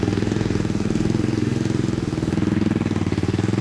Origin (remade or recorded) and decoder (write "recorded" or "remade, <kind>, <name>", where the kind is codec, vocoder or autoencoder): remade, autoencoder, DAC-VAE